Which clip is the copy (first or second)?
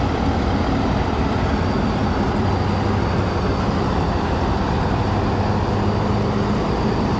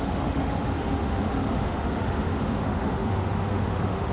second